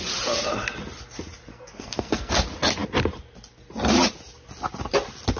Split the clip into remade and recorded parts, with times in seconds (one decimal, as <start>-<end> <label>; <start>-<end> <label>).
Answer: 0.0-1.5 recorded; 1.5-2.3 remade; 2.3-5.4 recorded